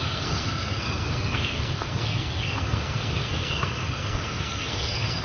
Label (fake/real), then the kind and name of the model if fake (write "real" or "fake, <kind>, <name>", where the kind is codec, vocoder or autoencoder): fake, codec, SNAC